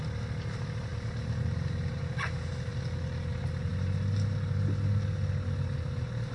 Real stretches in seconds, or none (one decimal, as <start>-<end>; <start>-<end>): 0.0-6.3